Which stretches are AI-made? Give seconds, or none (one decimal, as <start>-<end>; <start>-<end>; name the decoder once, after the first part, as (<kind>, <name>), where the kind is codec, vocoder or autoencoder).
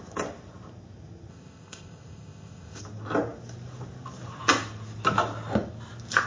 1.3-2.8 (codec, ZipCodec)